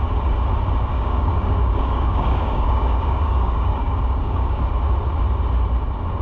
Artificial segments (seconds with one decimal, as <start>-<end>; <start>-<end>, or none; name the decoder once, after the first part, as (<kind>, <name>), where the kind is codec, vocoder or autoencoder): 0.9-4.6 (codec, DAC)